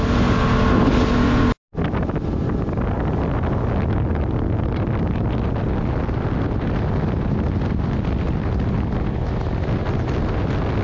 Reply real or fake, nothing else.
real